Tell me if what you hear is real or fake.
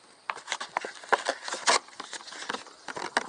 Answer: real